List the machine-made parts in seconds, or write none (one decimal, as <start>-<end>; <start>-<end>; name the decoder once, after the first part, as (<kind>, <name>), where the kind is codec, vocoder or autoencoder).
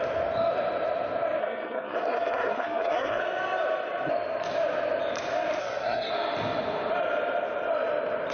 1.4-3.2 (codec, SNAC); 5.6-6.1